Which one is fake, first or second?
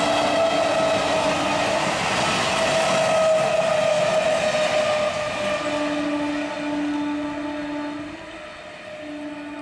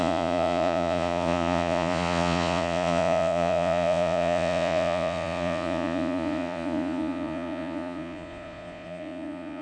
second